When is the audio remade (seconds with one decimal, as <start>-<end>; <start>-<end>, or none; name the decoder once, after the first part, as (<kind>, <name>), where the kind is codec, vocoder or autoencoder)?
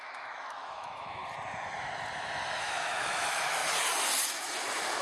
0.0-1.2 (autoencoder, DAC-VAE); 2.6-3.6